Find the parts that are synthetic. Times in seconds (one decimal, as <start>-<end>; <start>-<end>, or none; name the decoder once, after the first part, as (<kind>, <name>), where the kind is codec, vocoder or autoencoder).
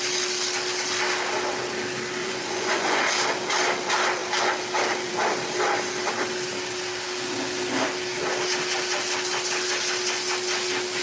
2.2-3.0 (vocoder, Vocos)